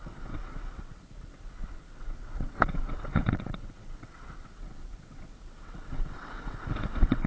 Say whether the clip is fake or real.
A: fake